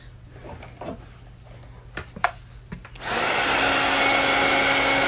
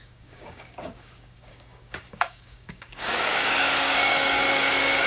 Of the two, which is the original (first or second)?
first